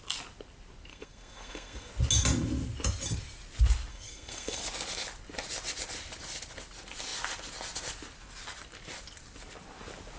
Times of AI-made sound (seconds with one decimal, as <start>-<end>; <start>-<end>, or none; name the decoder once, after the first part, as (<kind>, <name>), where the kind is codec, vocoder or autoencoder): 0.9-1.9 (codec, SNAC); 3.9-4.6